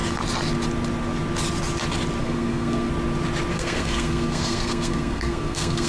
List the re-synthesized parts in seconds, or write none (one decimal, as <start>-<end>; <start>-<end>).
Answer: 2.2-2.9; 3.5-5.9